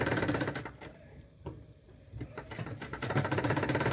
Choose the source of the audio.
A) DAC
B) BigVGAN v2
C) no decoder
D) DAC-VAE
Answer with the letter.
B